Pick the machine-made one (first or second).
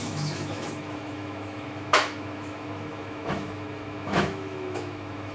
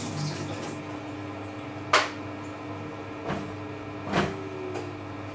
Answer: first